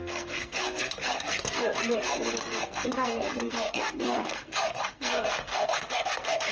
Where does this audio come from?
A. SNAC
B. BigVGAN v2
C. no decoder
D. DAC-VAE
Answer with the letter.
A